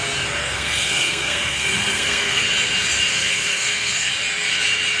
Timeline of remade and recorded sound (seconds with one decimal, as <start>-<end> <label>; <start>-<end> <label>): 0.0-0.4 recorded; 0.4-2.4 remade; 2.4-3.1 recorded; 3.1-4.1 remade; 4.1-5.0 recorded